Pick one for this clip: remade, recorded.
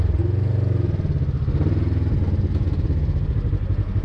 recorded